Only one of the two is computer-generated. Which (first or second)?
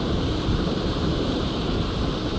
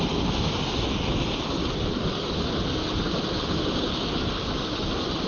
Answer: first